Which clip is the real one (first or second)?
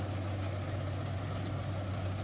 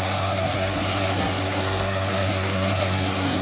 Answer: first